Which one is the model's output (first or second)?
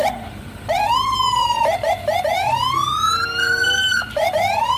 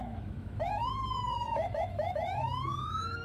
second